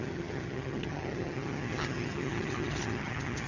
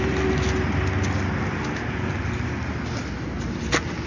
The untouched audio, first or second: second